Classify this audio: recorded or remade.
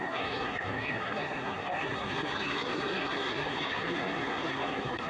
remade